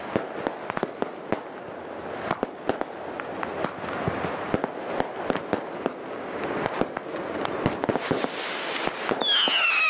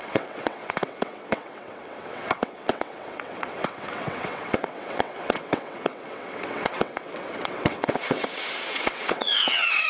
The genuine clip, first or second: first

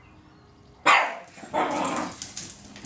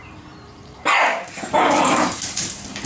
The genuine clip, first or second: first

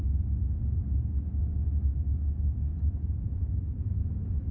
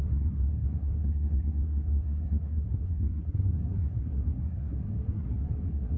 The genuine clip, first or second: first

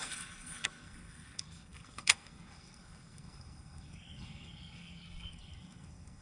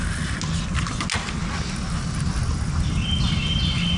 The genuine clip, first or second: second